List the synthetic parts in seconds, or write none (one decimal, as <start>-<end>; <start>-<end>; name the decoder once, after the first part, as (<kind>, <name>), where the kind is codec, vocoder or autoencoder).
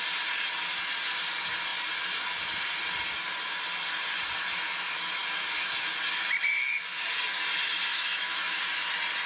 7.9-8.6 (autoencoder, DAC-VAE)